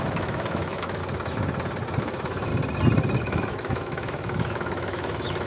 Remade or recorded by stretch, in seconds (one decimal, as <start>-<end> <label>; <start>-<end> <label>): 0.0-1.0 remade; 1.0-2.0 recorded; 2.0-2.5 remade; 2.5-3.2 recorded; 3.2-5.5 remade